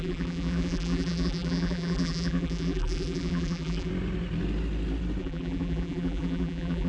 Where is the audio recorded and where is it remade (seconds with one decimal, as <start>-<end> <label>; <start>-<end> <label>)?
0.0-3.9 remade; 3.9-5.2 recorded; 5.2-6.9 remade